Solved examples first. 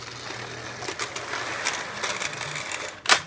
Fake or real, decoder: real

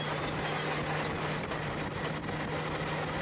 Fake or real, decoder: real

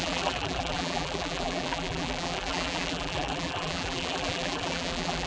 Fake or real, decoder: fake, vocoder, BigVGAN v2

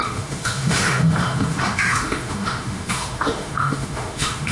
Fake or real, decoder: fake, autoencoder, DAC-VAE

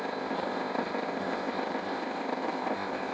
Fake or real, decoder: fake, codec, ZipCodec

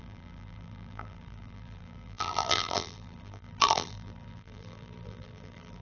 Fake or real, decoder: fake, vocoder, BigVGAN v2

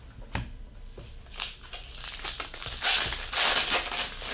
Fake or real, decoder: real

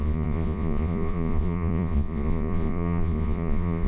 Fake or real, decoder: fake, vocoder, Vocos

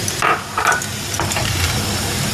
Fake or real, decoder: fake, vocoder, BigVGAN v2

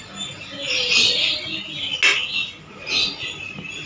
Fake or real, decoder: real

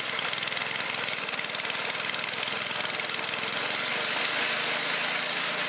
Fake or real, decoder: real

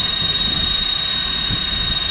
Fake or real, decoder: fake, vocoder, BigVGAN v2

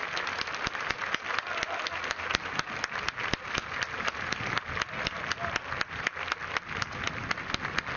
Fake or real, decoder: real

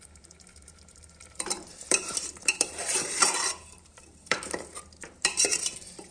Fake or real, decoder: fake, vocoder, BigVGAN v2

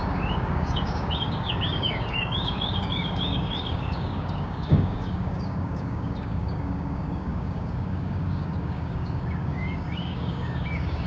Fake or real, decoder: fake, codec, DAC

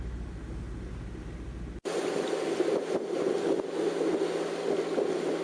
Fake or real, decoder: real